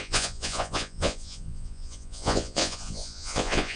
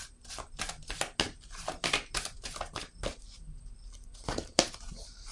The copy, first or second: first